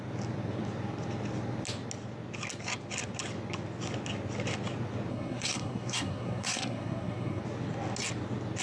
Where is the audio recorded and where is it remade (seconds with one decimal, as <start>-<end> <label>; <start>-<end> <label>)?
0.0-5.1 recorded; 5.1-7.4 remade; 7.4-8.6 recorded

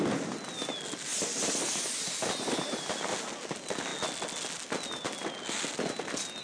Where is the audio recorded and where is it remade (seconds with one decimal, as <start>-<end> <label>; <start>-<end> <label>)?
0.0-6.4 recorded

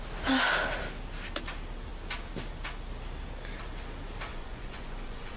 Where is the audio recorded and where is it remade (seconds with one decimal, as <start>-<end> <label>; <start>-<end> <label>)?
0.0-4.3 recorded; 4.3-5.4 remade

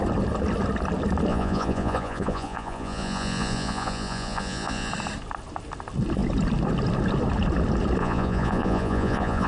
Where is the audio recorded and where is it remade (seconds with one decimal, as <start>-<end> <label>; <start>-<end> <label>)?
0.0-1.3 recorded; 1.3-4.9 remade; 4.9-8.0 recorded; 8.0-9.5 remade

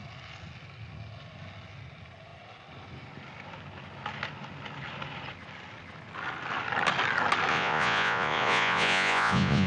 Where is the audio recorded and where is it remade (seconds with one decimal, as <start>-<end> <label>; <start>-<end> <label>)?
0.0-7.5 recorded; 7.5-9.7 remade

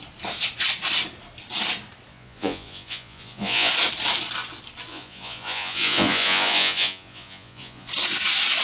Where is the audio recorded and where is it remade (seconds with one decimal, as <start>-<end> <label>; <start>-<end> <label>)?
0.0-2.1 recorded; 2.1-3.7 remade; 3.7-4.9 recorded; 4.9-7.9 remade; 7.9-8.6 recorded